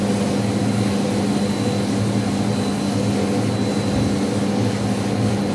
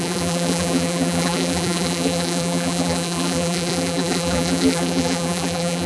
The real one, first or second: first